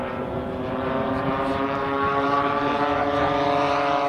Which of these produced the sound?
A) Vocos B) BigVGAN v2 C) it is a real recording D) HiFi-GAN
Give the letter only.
B